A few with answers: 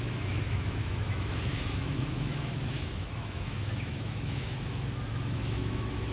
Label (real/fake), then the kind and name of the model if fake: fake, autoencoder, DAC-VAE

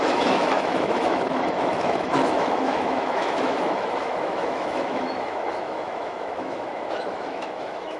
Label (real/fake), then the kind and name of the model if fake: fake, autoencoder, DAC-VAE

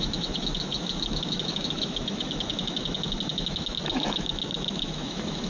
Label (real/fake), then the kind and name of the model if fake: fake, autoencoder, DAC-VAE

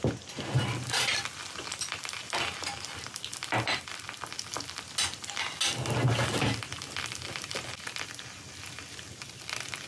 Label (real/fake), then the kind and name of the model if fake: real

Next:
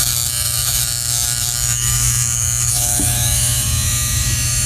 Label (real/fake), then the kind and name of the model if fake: fake, autoencoder, DAC-VAE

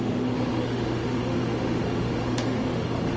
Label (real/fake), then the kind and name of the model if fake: fake, autoencoder, DAC-VAE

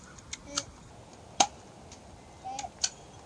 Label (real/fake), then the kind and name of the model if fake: real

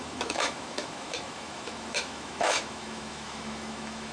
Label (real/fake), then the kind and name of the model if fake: fake, autoencoder, DAC-VAE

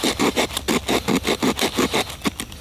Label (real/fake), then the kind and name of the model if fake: real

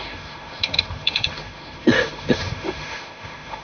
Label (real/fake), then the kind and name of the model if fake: fake, autoencoder, DAC-VAE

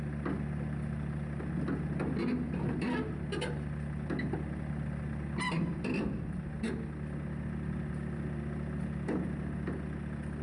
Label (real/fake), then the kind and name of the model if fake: real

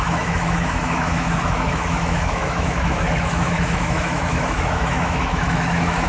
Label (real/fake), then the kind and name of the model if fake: fake, autoencoder, DAC-VAE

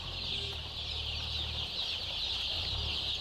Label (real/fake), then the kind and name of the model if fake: real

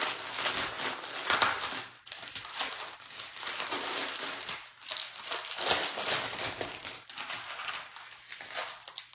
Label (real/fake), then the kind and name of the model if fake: real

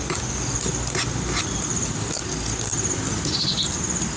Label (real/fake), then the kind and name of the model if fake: real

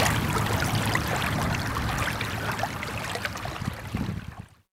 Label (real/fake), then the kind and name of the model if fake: real